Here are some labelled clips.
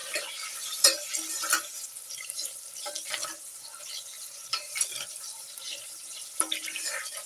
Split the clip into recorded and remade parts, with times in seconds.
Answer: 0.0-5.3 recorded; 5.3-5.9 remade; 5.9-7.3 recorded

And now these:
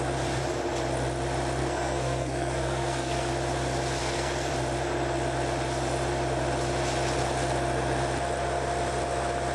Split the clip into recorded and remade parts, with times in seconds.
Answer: 0.0-1.6 recorded; 1.6-3.3 remade; 3.3-4.0 recorded; 4.0-4.5 remade; 4.5-9.5 recorded

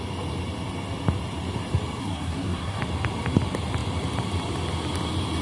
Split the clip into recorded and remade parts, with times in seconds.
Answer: 0.0-2.0 recorded; 2.0-2.8 remade; 2.8-5.4 recorded